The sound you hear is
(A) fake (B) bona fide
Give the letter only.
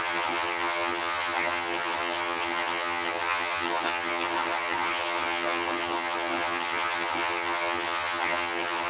A